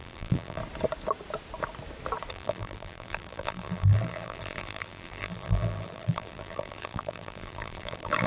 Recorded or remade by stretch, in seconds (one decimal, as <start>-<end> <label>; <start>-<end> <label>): 0.0-0.6 remade; 0.6-2.3 recorded; 2.3-8.3 remade